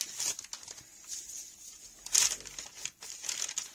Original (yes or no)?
yes